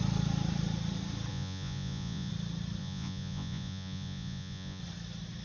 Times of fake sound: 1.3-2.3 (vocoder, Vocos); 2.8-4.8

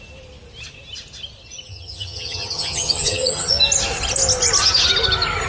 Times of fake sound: 1.7-3.5 (vocoder, HiFi-GAN)

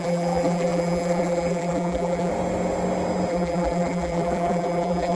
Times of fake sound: 0.0-2.3 (vocoder, BigVGAN v2); 3.3-5.2